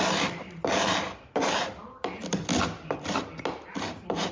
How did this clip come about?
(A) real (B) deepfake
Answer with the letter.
A